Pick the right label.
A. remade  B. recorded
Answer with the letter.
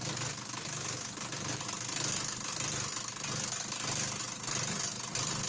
B